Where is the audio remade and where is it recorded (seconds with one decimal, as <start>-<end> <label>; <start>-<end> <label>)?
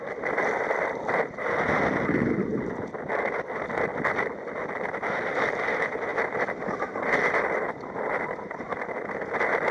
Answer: 0.0-9.7 recorded